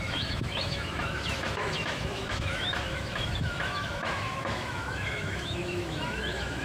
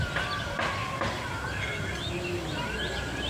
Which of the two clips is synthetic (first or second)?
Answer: first